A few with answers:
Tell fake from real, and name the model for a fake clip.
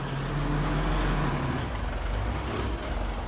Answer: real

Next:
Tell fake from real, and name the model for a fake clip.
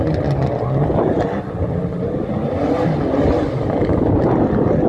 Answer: real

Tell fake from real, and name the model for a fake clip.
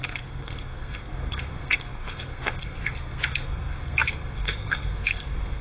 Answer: fake, codec, SNAC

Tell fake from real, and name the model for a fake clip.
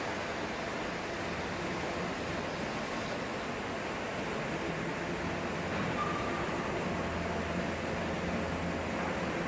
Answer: real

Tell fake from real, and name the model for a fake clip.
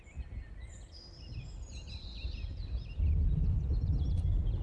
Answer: real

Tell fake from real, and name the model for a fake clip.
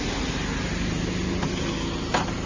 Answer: real